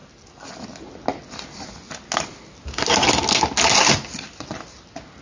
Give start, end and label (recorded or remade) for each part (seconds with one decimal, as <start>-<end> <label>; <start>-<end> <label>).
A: 0.0-5.2 recorded